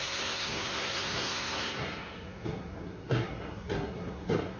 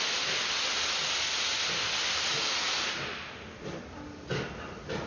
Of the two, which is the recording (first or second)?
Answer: second